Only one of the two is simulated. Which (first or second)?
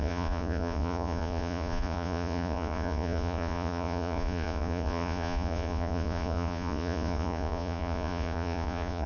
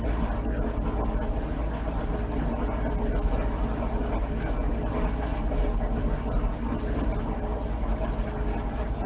first